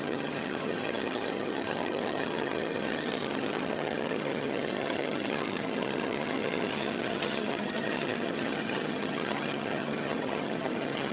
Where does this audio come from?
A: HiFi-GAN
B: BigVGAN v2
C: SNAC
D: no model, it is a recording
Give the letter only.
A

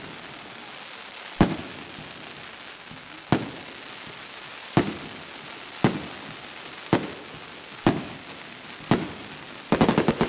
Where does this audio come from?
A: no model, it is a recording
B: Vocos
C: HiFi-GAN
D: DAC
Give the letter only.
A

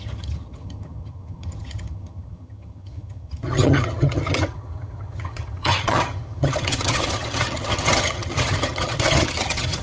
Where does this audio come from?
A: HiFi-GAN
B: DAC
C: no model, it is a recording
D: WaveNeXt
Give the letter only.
A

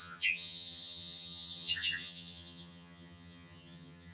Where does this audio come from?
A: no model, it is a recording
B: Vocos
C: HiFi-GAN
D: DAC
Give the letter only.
C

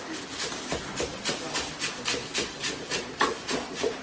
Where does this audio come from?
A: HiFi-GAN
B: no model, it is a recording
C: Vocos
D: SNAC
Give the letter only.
B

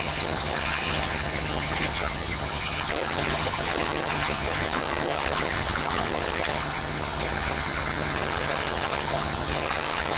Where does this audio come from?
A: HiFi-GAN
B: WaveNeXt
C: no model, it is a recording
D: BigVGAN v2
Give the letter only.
A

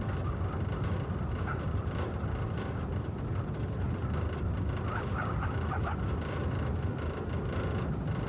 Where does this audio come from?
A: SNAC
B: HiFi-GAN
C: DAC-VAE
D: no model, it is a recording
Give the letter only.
D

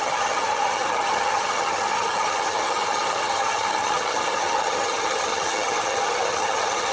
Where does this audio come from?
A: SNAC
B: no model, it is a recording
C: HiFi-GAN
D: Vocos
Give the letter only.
C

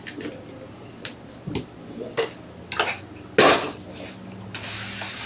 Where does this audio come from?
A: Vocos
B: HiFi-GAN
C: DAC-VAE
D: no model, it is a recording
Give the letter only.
D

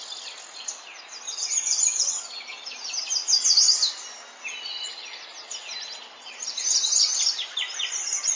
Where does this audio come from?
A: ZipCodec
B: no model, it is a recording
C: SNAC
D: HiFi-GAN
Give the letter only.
B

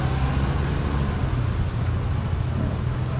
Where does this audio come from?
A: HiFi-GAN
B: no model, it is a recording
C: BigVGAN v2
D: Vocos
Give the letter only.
B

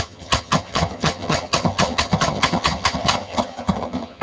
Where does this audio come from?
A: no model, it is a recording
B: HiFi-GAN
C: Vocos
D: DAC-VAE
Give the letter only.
B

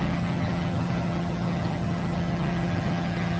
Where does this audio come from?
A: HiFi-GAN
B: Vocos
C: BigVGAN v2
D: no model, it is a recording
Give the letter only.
A